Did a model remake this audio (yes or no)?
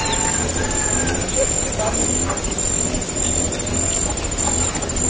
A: no